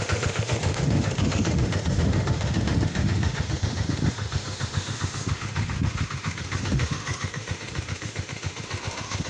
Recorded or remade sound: remade